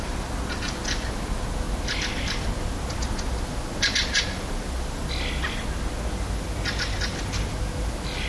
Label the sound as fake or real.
real